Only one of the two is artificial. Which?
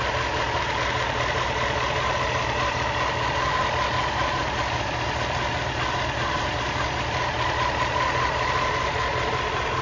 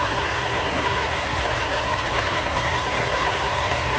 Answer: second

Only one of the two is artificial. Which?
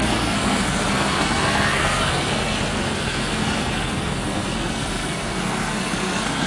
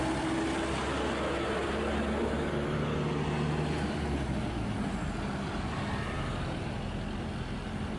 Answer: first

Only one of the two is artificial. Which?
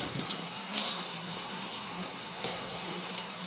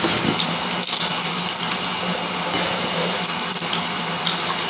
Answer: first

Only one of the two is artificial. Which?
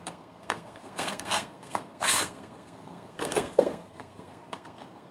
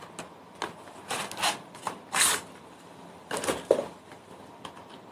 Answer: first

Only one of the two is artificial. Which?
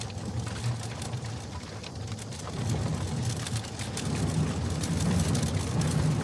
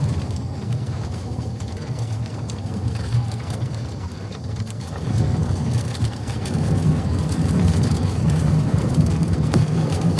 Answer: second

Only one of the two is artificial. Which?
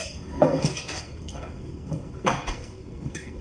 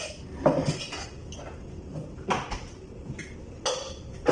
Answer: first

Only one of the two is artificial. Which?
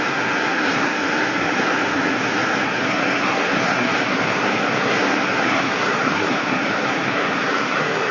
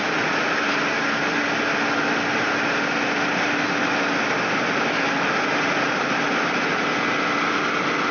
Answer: first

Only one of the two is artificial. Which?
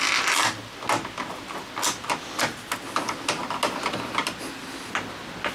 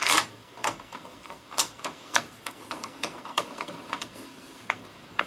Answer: second